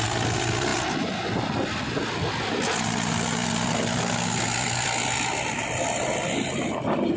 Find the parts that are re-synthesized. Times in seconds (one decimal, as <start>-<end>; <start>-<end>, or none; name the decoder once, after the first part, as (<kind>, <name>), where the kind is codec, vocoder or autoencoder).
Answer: none